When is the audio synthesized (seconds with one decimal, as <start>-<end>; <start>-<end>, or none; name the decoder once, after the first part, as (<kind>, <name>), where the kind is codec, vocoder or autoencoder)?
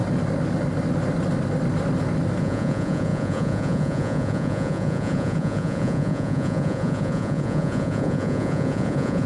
2.4-9.3 (vocoder, Vocos)